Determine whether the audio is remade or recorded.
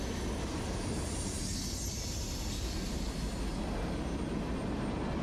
recorded